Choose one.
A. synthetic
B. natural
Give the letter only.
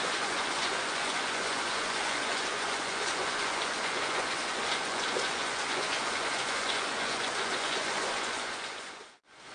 A